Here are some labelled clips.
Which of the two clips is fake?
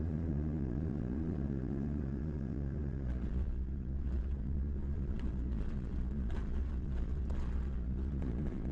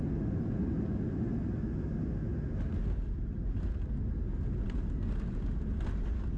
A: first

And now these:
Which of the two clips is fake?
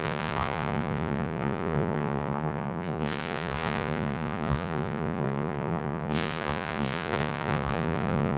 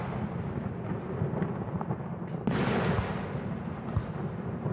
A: first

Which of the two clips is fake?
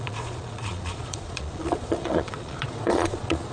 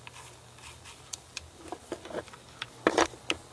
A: first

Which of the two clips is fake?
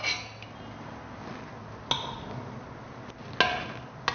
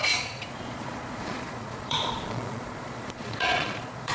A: second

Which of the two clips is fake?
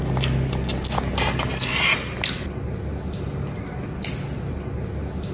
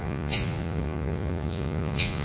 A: second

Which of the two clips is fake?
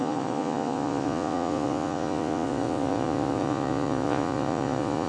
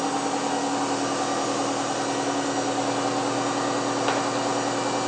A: first